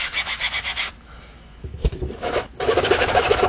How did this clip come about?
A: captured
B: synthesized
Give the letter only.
B